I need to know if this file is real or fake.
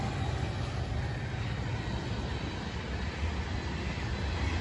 real